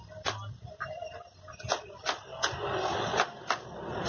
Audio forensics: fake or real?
real